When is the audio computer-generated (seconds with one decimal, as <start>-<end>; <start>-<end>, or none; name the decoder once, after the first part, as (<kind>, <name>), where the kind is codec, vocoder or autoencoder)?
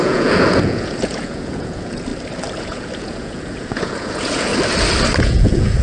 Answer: 0.0-2.1 (vocoder, Vocos); 2.6-4.5; 5.2-5.8